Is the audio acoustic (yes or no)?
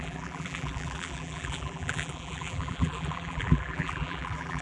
no